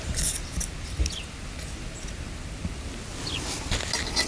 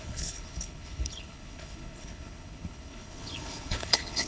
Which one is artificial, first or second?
second